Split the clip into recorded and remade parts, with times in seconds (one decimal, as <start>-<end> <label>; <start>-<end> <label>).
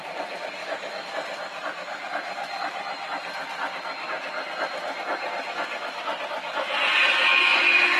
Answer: 0.0-0.6 recorded; 0.6-1.1 remade; 1.1-8.0 recorded